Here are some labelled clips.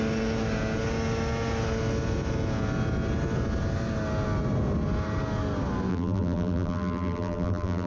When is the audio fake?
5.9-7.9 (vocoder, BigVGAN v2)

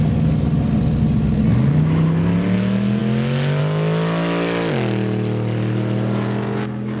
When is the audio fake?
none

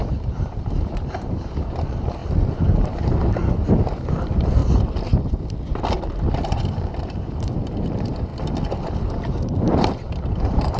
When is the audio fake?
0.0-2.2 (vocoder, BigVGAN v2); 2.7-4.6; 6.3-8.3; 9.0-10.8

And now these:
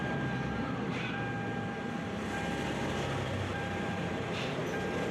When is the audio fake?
0.0-0.9 (vocoder, BigVGAN v2); 3.5-4.6